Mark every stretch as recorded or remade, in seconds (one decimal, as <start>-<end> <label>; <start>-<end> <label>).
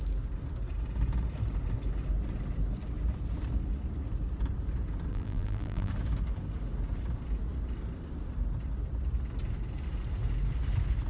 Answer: 0.0-5.1 recorded; 5.1-5.9 remade; 5.9-11.1 recorded